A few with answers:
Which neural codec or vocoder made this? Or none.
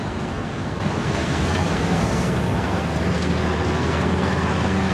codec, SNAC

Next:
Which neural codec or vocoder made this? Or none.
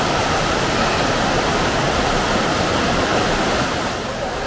none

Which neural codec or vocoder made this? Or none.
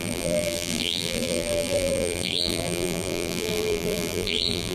vocoder, BigVGAN v2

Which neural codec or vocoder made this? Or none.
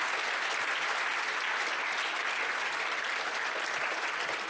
none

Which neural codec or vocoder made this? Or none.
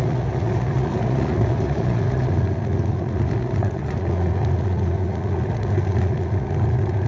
vocoder, Vocos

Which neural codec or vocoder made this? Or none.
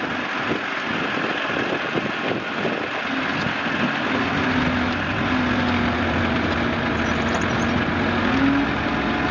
none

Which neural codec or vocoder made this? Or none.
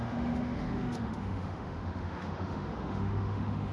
autoencoder, DAC-VAE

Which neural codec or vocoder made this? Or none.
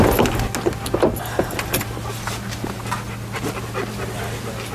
none